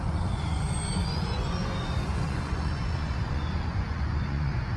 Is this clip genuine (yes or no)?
no